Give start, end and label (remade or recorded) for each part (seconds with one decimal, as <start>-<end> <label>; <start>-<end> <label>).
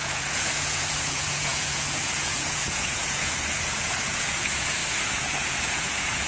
0.0-6.3 remade